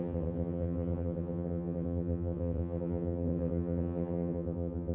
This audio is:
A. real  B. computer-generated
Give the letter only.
B